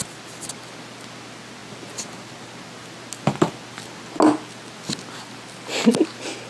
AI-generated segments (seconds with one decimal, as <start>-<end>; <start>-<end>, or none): none

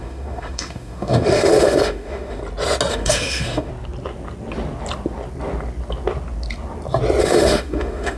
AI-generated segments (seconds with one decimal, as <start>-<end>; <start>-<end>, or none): 0.0-2.4; 2.9-3.7; 7.2-8.2